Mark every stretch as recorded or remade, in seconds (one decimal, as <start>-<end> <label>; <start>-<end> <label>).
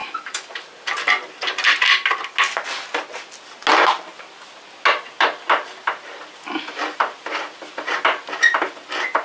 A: 0.0-0.6 remade; 0.6-9.2 recorded